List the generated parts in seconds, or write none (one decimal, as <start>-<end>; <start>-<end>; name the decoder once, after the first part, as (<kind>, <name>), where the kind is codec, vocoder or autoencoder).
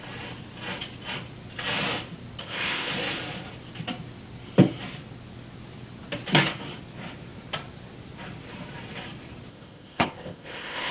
2.4-2.9 (codec, ZipCodec); 9.5-10.9